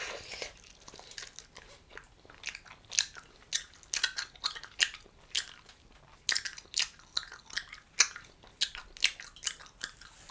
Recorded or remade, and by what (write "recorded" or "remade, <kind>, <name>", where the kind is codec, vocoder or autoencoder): recorded